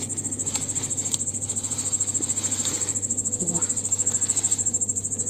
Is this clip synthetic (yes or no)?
no